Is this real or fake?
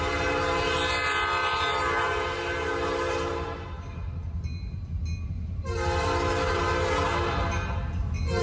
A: real